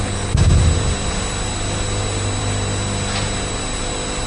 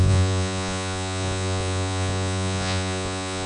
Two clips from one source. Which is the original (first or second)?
first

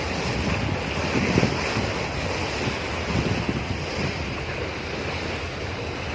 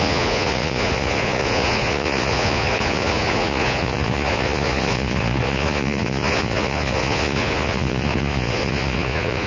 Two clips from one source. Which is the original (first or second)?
first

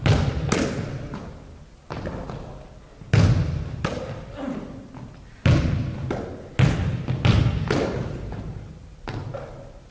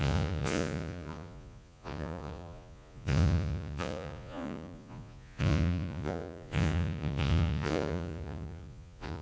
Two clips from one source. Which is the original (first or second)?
first